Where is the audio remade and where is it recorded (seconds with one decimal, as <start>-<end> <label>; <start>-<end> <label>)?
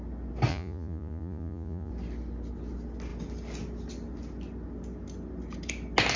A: 0.0-0.5 recorded; 0.5-1.9 remade; 1.9-6.2 recorded